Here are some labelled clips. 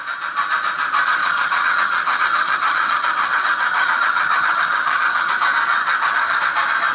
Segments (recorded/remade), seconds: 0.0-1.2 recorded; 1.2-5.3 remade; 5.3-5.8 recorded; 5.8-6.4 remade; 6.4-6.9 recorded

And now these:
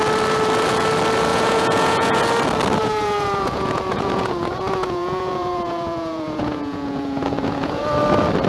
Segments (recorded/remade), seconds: 0.0-1.3 recorded; 1.3-2.2 remade; 2.2-2.8 recorded; 2.8-7.8 remade; 7.8-8.5 recorded

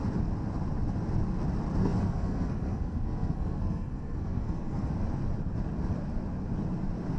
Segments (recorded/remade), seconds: 0.0-1.8 recorded; 1.8-4.9 remade; 4.9-7.2 recorded

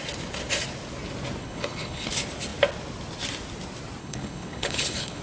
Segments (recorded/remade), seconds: 0.0-1.4 recorded; 1.4-2.1 remade; 2.1-4.0 recorded; 4.0-5.2 remade

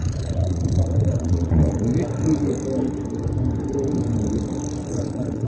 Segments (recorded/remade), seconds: 0.0-1.9 remade; 1.9-4.9 recorded; 4.9-5.5 remade

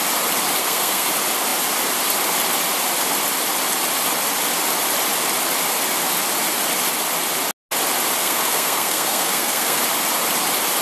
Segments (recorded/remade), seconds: 0.0-0.6 recorded; 0.6-1.1 remade; 1.1-8.2 recorded; 8.2-9.8 remade; 9.8-10.8 recorded